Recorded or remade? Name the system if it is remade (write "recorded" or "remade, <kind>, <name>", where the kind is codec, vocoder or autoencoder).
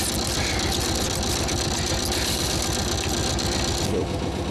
recorded